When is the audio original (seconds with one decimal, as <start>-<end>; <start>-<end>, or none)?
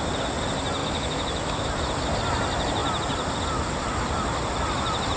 0.0-0.8; 1.7-5.2